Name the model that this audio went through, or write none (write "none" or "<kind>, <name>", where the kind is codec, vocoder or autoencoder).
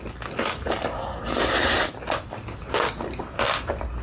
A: none